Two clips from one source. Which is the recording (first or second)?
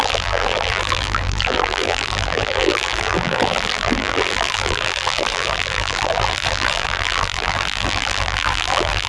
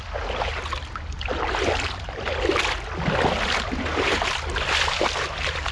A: second